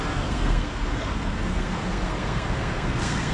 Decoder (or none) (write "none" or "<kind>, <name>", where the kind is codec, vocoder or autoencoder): codec, SNAC